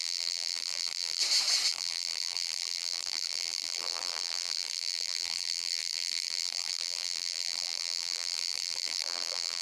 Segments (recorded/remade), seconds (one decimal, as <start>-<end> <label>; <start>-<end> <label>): 0.0-1.2 remade; 1.2-1.7 recorded; 1.7-9.6 remade